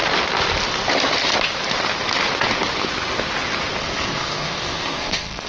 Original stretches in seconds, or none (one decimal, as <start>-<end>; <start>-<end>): 0.0-3.8

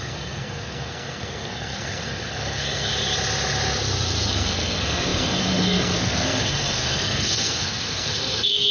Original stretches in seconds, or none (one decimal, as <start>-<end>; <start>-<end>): 2.9-4.3

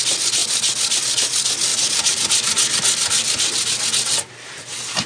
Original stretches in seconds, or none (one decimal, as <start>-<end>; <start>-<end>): 0.0-5.1